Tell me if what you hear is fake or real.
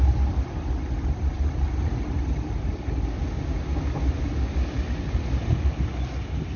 real